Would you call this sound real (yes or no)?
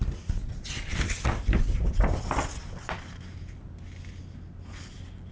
yes